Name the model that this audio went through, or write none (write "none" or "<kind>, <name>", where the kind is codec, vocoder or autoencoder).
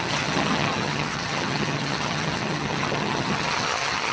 vocoder, HiFi-GAN